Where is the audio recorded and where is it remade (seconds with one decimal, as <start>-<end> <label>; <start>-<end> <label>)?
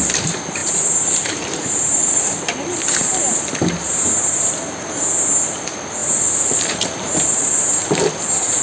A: 0.0-0.6 recorded; 0.6-4.9 remade; 4.9-6.0 recorded; 6.0-8.1 remade; 8.1-8.6 recorded